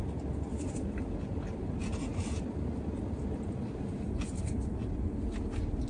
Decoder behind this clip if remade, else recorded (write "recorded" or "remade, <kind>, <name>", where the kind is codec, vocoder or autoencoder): recorded